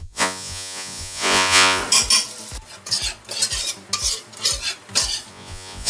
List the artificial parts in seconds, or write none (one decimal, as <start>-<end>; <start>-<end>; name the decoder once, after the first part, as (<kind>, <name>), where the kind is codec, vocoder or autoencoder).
0.0-1.8 (vocoder, Vocos); 5.3-5.9